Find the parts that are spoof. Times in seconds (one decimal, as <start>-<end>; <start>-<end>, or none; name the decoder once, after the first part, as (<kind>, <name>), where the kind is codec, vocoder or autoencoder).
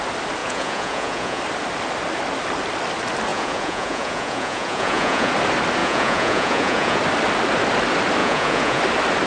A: 0.4-1.4 (vocoder, Vocos); 3.3-5.3; 5.8-7.0; 8.2-8.8